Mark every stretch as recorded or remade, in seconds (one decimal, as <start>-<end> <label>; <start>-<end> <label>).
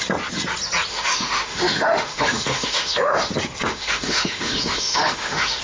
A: 0.0-0.9 recorded; 0.9-3.3 remade; 3.3-3.7 recorded; 3.7-5.6 remade